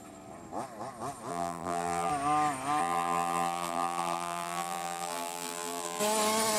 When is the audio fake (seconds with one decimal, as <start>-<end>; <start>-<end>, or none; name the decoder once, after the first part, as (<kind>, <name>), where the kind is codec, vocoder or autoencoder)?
1.3-2.1 (vocoder, BigVGAN v2); 2.8-6.0